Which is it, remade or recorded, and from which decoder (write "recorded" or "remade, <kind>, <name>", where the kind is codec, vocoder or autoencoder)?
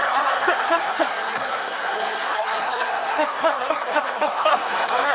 remade, codec, SNAC